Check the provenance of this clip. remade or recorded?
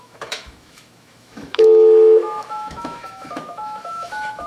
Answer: remade